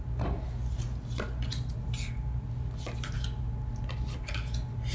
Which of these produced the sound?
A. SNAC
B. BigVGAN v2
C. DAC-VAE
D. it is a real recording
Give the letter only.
D